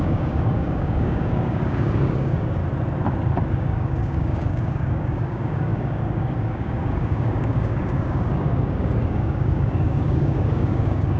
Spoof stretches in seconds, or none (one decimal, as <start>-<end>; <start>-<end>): 0.0-2.6; 3.5-11.2